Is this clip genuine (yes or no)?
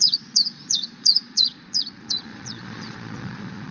no